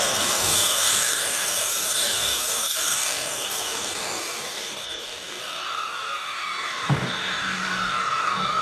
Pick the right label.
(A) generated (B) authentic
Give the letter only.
A